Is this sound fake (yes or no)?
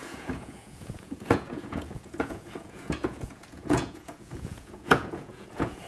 yes